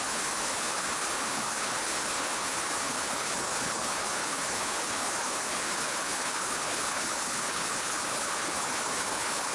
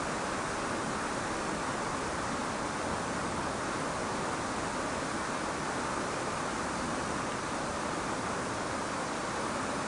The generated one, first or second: first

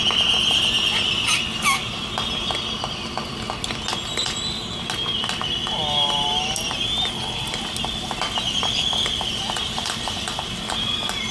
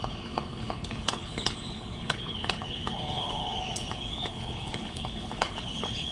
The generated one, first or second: second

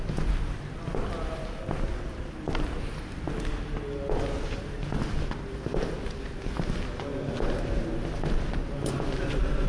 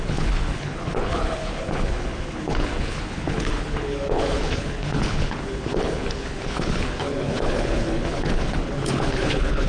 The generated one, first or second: second